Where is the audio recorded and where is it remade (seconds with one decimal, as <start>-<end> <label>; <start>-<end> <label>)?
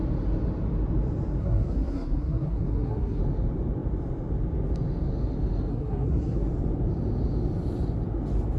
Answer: 0.0-1.4 recorded; 1.4-3.2 remade; 3.2-5.7 recorded; 5.7-6.5 remade; 6.5-8.6 recorded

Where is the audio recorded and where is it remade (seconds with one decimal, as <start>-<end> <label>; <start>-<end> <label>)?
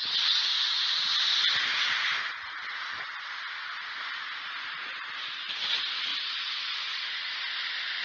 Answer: 0.0-6.1 recorded; 6.1-6.7 remade; 6.7-8.0 recorded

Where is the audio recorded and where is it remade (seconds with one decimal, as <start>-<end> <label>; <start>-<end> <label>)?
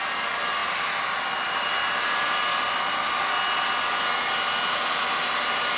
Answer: 0.0-5.8 recorded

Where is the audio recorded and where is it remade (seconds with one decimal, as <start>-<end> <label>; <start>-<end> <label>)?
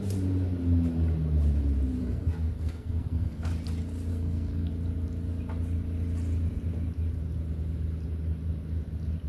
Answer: 0.0-2.0 recorded; 2.0-3.5 remade; 3.5-4.1 recorded; 4.1-4.7 remade; 4.7-9.3 recorded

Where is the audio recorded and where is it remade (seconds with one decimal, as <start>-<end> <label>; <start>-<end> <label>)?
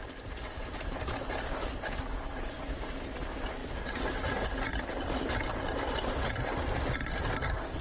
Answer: 0.0-7.8 recorded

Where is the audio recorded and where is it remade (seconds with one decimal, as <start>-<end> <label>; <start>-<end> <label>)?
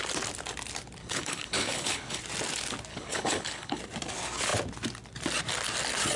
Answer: 0.0-1.0 recorded; 1.0-2.2 remade; 2.2-2.9 recorded; 2.9-3.8 remade; 3.8-6.2 recorded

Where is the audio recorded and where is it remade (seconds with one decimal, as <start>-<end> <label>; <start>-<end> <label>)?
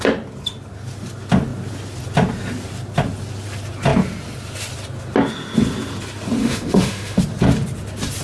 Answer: 0.0-6.4 recorded; 6.4-7.2 remade; 7.2-8.2 recorded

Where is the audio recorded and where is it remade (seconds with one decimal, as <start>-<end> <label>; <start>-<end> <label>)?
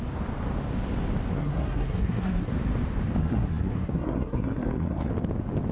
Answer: 0.0-1.3 recorded; 1.3-2.5 remade; 2.5-3.2 recorded; 3.2-5.1 remade; 5.1-5.7 recorded